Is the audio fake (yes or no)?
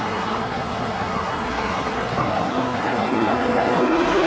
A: yes